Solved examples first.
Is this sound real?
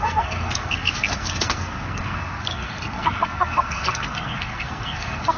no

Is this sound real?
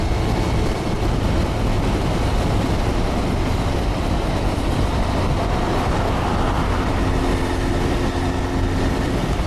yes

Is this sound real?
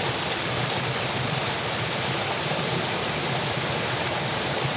yes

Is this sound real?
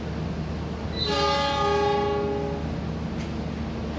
yes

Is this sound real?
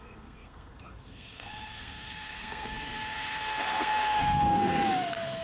no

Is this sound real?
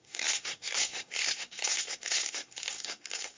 no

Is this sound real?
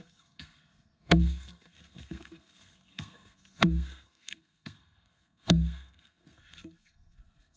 no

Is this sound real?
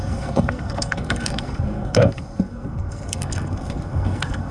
no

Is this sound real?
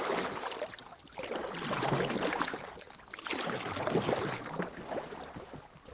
yes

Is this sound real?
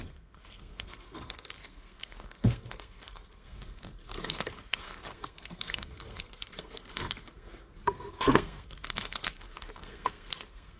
no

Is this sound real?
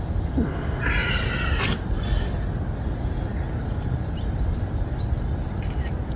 yes